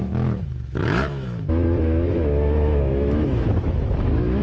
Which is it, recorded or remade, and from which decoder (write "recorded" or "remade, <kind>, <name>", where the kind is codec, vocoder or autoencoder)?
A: remade, autoencoder, DAC-VAE